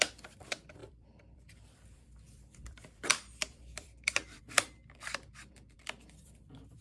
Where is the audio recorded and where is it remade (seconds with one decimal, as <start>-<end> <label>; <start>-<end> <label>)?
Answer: 0.0-6.8 remade